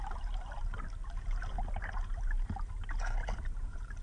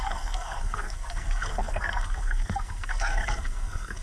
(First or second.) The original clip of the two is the first